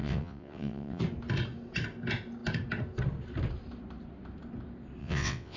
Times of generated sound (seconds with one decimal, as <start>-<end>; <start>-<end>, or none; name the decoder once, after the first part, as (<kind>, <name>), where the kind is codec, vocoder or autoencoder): 0.0-1.0 (vocoder, WaveNeXt); 5.0-5.6